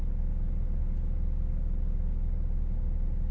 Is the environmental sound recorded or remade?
recorded